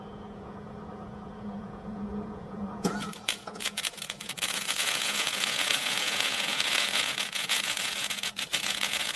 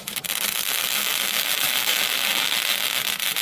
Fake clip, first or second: first